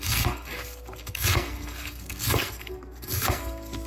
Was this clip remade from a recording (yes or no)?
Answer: yes